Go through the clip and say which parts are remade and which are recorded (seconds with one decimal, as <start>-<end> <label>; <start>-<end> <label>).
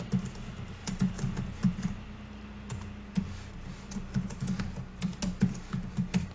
0.0-6.3 recorded